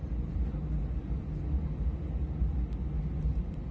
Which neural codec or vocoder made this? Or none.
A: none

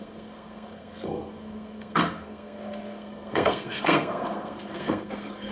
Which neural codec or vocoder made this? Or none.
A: codec, SNAC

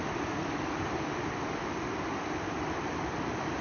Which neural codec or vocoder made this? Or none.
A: none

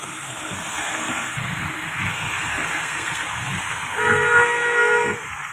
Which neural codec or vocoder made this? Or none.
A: codec, SNAC